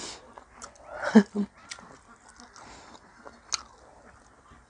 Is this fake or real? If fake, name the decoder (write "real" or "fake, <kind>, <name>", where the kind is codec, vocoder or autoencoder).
real